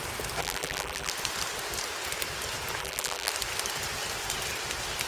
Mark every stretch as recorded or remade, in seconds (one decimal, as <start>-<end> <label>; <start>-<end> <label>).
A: 0.0-0.4 recorded; 0.4-1.1 remade; 1.1-2.8 recorded; 2.8-3.3 remade; 3.3-5.1 recorded